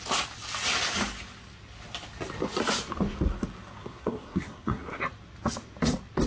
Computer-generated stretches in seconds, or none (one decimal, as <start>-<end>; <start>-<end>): 3.8-5.0